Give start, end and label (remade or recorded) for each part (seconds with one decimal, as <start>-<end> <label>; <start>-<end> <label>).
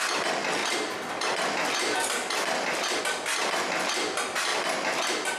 0.0-5.4 recorded